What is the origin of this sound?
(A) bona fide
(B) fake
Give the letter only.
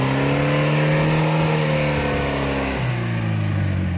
A